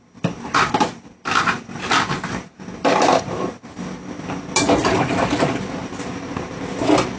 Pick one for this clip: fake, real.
real